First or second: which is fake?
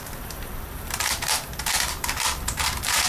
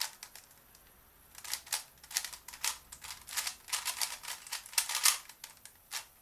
first